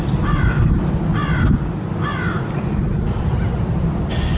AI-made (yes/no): no